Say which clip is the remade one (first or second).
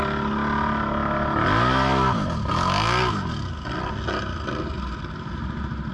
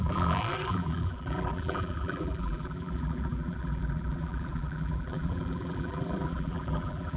second